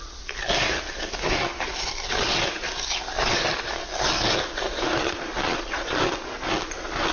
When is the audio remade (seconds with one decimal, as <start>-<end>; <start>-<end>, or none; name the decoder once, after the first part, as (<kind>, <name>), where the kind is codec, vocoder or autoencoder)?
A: 5.0-6.0 (vocoder, Vocos)